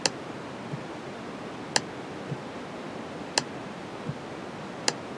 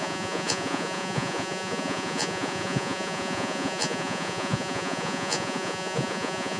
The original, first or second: first